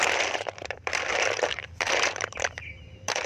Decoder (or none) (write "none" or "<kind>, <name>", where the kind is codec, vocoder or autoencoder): vocoder, BigVGAN v2